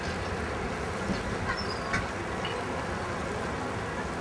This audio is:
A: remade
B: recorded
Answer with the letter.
B